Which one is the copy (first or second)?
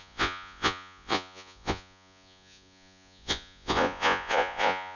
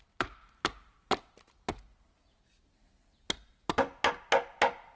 first